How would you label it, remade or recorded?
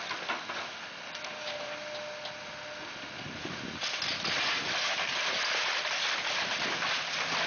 recorded